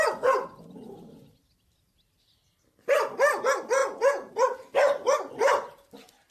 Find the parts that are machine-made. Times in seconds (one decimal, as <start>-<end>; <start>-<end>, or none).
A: 3.8-4.3